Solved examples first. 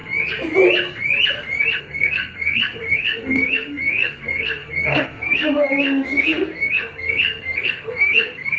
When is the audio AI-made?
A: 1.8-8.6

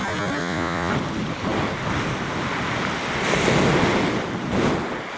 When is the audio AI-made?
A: 0.4-0.9

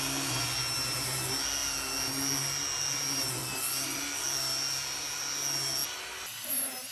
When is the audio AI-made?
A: none

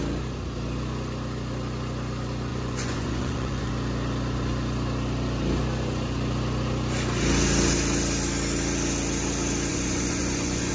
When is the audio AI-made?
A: 2.5-3.7; 9.7-10.7

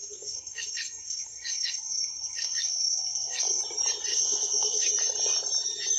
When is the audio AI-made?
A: 0.0-3.6; 4.1-4.9